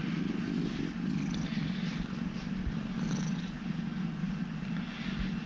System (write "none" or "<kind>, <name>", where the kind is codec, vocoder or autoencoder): none